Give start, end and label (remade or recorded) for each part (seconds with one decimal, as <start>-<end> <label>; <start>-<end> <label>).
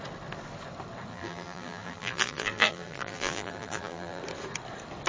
0.0-1.1 recorded; 1.1-4.2 remade; 4.2-5.1 recorded